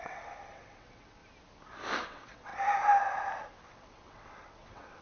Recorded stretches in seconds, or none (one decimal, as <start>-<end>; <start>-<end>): 1.2-2.1; 2.5-3.7